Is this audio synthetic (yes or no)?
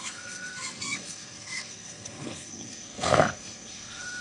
yes